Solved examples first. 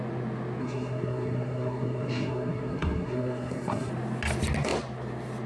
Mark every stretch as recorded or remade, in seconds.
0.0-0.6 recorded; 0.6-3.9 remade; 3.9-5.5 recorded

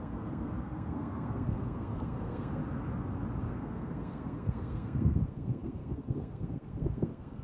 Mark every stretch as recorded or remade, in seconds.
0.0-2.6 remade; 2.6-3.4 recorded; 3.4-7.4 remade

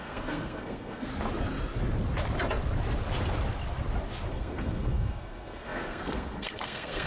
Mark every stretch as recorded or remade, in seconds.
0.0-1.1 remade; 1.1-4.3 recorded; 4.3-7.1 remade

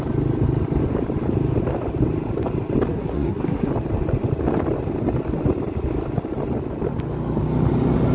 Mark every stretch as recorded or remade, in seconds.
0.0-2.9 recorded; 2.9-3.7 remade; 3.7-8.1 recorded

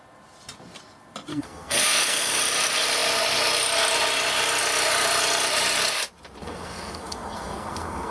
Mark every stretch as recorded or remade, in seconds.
0.0-1.3 recorded; 1.3-2.4 remade; 2.4-6.4 recorded; 6.4-8.1 remade

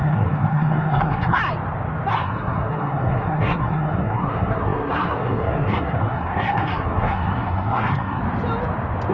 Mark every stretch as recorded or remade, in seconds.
0.0-1.4 remade; 1.4-2.1 recorded; 2.1-8.2 remade; 8.2-9.1 recorded

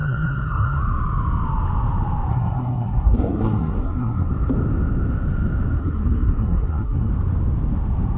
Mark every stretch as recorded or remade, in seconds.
0.0-0.8 remade; 0.8-2.3 recorded; 2.3-4.3 remade; 4.3-5.8 recorded; 5.8-7.1 remade; 7.1-8.2 recorded